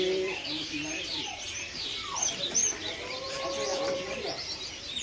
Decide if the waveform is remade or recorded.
remade